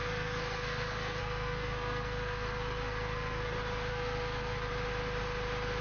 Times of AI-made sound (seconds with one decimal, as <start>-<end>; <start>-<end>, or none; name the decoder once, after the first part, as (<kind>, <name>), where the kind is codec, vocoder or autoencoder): 0.0-3.5 (codec, SNAC); 3.9-4.7